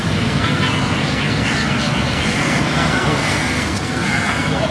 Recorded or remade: remade